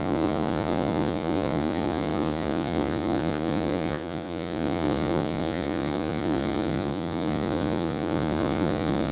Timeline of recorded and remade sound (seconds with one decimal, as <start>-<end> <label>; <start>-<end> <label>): 0.0-9.1 remade